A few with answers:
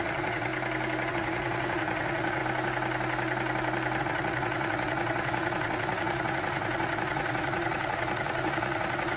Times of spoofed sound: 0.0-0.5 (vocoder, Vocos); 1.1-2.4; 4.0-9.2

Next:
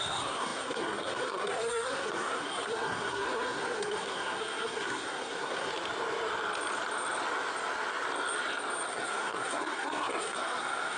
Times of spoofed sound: 0.0-5.7 (codec, SNAC); 8.9-11.0

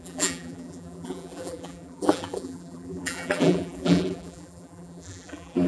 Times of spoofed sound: 0.0-5.7 (vocoder, BigVGAN v2)

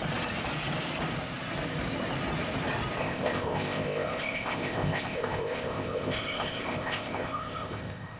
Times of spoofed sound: 3.0-8.2 (codec, ZipCodec)

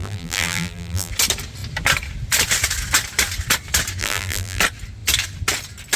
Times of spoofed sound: 0.0-1.1 (vocoder, BigVGAN v2); 4.0-4.6

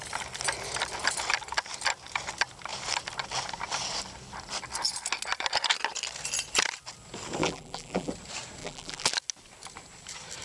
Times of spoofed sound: 7.4-8.1 (vocoder, BigVGAN v2); 8.6-9.1

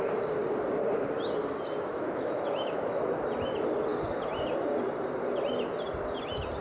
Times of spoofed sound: 1.9-3.0 (autoencoder, DAC-VAE)

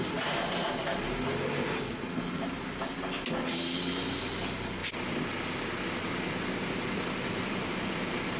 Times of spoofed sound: none